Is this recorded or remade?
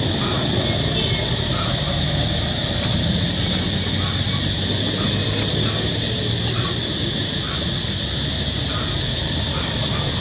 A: recorded